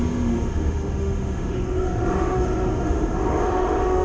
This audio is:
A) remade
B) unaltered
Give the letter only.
A